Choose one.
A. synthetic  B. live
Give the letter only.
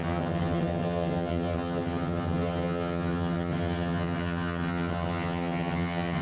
A